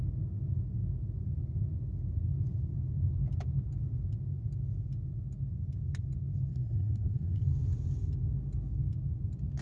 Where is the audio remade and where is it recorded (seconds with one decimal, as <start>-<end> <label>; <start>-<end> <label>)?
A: 0.0-6.5 recorded; 6.5-7.4 remade; 7.4-9.6 recorded